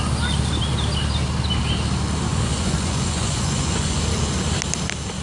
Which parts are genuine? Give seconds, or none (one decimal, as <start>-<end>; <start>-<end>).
0.0-2.3; 4.0-5.2